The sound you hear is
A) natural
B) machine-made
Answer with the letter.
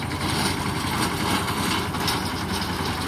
A